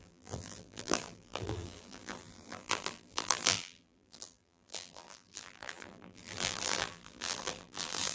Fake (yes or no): yes